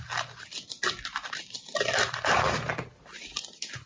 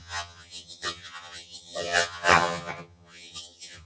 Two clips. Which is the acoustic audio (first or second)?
first